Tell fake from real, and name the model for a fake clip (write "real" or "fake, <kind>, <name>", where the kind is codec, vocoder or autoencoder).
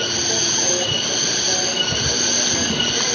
real